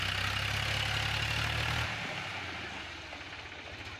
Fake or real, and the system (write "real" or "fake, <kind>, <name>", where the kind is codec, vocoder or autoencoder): real